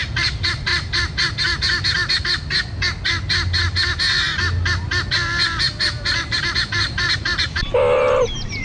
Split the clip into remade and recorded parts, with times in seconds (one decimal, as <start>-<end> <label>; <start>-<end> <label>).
0.0-0.7 remade; 0.7-5.1 recorded; 5.1-8.6 remade